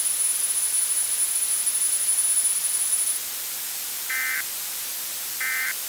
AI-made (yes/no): yes